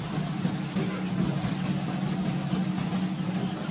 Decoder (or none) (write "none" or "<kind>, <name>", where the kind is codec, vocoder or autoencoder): none